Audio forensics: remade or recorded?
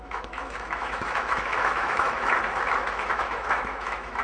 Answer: remade